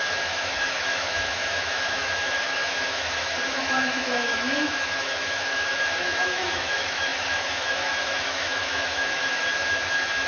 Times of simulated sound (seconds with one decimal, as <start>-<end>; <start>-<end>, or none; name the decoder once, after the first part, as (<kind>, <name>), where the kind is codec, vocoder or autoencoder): 0.0-10.3 (autoencoder, DAC-VAE)